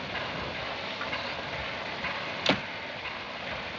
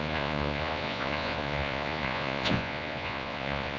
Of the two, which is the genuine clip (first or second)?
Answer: first